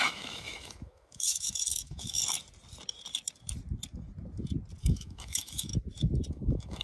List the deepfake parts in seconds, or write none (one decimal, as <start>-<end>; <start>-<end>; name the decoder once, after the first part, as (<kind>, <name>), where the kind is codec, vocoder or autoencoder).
0.0-2.2 (autoencoder, DAC-VAE); 4.8-5.7; 6.3-6.8